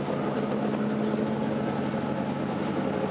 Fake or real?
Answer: real